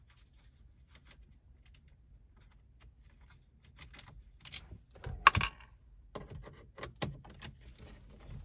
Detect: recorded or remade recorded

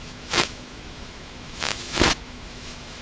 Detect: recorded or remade remade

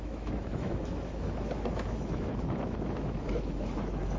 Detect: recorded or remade remade